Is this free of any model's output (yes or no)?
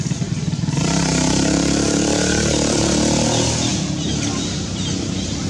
yes